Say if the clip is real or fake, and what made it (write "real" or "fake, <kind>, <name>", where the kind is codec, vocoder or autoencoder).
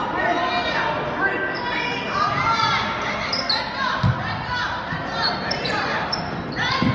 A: real